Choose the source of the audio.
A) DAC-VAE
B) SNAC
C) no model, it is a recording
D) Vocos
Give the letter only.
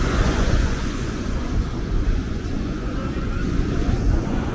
D